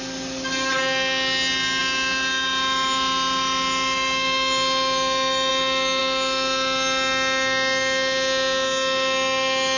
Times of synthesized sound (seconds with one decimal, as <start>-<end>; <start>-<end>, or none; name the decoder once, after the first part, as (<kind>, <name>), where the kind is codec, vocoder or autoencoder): none